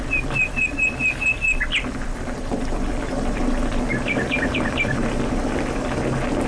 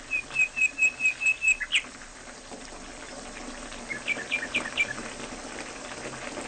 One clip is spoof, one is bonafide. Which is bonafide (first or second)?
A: second